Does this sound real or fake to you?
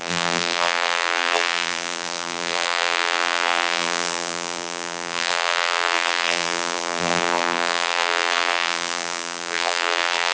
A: fake